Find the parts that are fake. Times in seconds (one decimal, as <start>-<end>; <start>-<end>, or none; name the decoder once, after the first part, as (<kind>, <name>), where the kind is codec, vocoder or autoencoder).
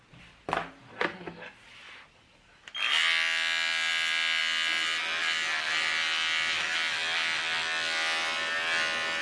none